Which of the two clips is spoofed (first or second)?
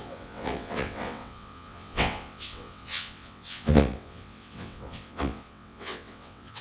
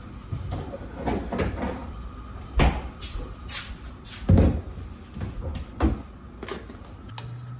first